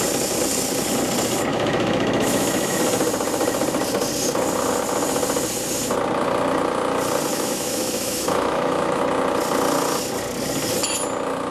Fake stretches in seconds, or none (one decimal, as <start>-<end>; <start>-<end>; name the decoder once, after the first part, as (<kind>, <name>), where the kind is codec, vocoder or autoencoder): 1.5-2.8 (autoencoder, DAC-VAE); 7.3-9.0